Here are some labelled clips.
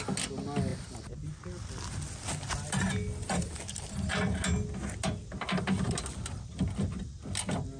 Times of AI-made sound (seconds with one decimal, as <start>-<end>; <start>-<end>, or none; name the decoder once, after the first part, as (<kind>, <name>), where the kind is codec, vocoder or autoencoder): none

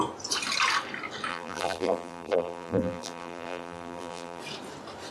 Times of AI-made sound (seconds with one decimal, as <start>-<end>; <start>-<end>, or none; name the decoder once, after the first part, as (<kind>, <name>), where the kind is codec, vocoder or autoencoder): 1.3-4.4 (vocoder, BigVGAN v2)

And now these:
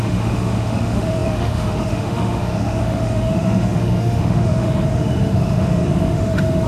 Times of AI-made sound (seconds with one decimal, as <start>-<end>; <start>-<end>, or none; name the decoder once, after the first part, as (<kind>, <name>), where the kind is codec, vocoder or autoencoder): 0.0-6.7 (autoencoder, DAC-VAE)

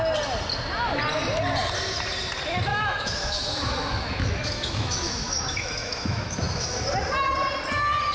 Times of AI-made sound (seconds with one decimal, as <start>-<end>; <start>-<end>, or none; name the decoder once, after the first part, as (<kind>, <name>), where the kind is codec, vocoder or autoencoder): 2.7-6.8 (autoencoder, DAC-VAE)

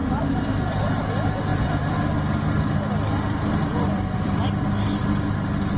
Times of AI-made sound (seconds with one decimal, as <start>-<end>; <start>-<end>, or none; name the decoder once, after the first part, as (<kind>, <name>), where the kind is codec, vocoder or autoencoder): 0.0-0.8 (vocoder, BigVGAN v2); 1.5-2.9; 3.6-4.5

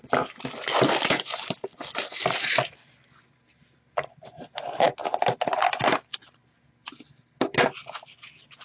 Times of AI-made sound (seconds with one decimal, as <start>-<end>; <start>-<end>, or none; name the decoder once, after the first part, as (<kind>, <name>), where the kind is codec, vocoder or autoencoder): none

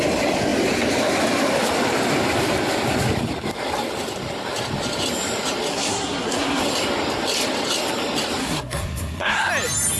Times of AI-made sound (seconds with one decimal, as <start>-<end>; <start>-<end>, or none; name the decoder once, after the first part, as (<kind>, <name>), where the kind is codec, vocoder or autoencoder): 5.7-6.6 (codec, SNAC); 8.4-9.5